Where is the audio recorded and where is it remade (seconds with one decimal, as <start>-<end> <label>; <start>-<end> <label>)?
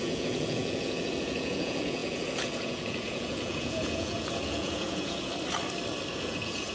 0.0-5.3 remade; 5.3-6.1 recorded; 6.1-6.7 remade